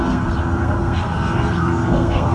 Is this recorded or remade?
remade